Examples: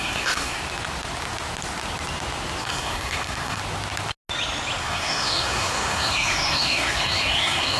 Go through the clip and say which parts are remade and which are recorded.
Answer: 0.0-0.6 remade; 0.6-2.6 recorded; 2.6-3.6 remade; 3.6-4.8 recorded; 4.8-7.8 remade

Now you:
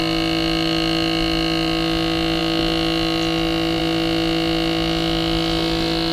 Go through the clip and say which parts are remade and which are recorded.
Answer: 0.0-6.1 recorded

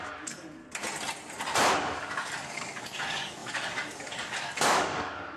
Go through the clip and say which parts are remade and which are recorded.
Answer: 0.0-0.6 remade; 0.6-1.8 recorded; 1.8-5.4 remade

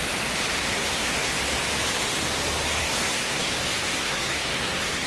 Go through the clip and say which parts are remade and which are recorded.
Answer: 0.0-0.6 recorded; 0.6-1.4 remade; 1.4-2.8 recorded; 2.8-3.5 remade; 3.5-4.0 recorded; 4.0-5.1 remade

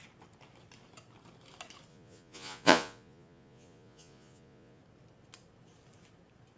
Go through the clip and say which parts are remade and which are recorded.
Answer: 0.0-1.9 recorded; 1.9-4.8 remade; 4.8-6.6 recorded